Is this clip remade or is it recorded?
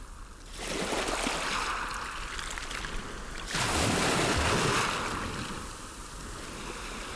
recorded